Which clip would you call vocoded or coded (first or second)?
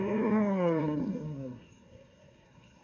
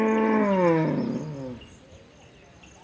first